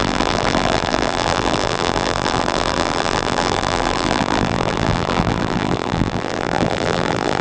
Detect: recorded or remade remade